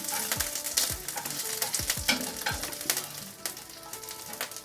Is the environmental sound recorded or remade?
recorded